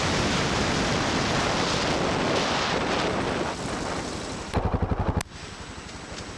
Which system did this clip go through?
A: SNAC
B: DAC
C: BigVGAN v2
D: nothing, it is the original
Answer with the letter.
D